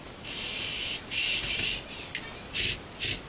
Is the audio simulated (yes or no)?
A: no